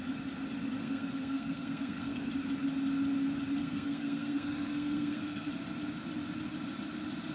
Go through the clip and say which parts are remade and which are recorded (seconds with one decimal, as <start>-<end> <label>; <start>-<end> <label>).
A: 0.0-0.8 recorded; 0.8-2.3 remade; 2.3-3.6 recorded; 3.6-5.5 remade; 5.5-7.3 recorded